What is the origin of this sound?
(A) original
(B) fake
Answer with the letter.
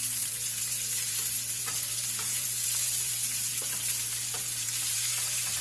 B